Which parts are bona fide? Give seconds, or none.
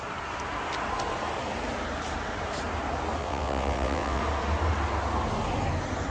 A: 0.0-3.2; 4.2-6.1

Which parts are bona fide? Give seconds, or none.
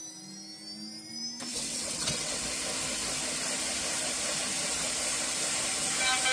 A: 0.0-1.5; 2.4-6.3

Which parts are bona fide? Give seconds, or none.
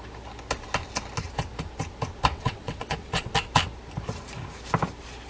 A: 0.0-2.3; 3.3-5.3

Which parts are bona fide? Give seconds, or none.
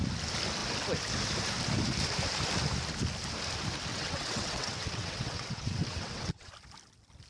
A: 0.0-3.9; 6.5-7.3